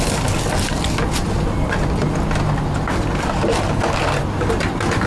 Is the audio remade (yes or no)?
no